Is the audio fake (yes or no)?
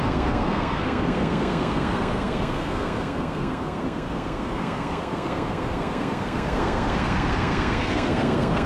yes